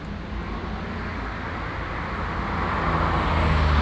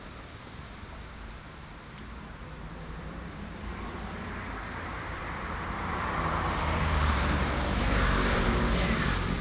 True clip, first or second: first